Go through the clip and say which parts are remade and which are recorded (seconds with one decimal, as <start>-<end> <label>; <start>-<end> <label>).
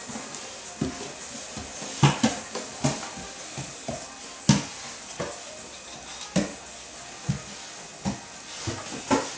0.0-9.4 recorded